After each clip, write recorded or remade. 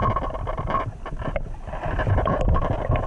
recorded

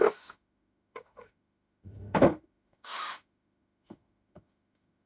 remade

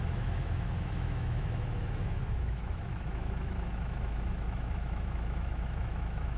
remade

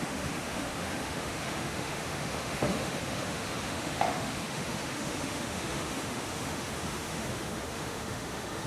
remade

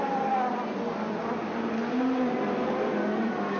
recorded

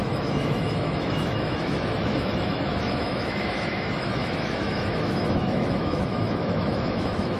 remade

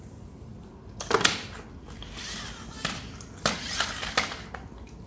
recorded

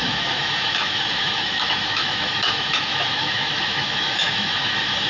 remade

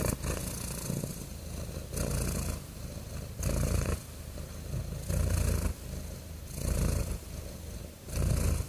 recorded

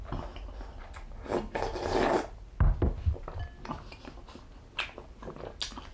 recorded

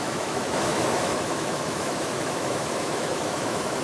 remade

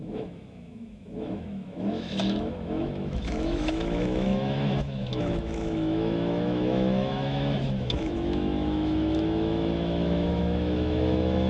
remade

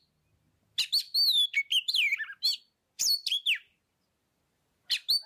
recorded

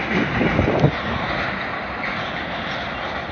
recorded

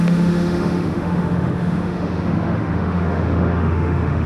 remade